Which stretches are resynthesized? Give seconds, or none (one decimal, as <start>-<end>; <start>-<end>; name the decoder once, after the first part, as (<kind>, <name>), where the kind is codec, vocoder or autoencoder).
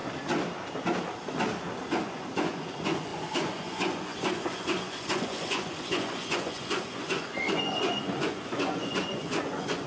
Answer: 2.0-9.9 (vocoder, Vocos)